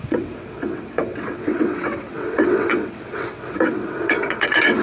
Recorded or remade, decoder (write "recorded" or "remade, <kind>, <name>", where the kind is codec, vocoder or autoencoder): remade, vocoder, WaveNeXt